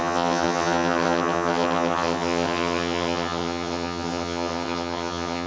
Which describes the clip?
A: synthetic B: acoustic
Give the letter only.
A